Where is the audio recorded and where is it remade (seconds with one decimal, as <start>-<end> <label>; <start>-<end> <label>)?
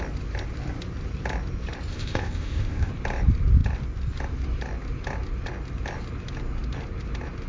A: 0.0-1.9 recorded; 1.9-2.9 remade; 2.9-7.5 recorded